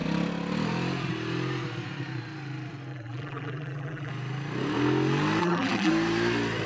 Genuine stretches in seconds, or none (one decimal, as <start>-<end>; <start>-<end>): 0.0-2.9; 4.1-5.4; 5.9-6.7